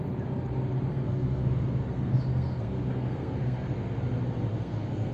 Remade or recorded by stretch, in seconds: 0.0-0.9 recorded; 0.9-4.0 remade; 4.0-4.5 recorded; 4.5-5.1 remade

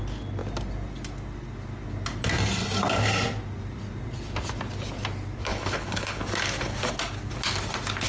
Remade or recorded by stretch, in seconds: 0.0-5.5 recorded; 5.5-6.2 remade; 6.2-8.1 recorded